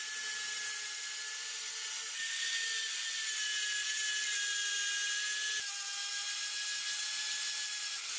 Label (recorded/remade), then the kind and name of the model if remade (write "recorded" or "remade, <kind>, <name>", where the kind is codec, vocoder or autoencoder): recorded